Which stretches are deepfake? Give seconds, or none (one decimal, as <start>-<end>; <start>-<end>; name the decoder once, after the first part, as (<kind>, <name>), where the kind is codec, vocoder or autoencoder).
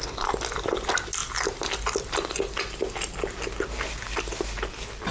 none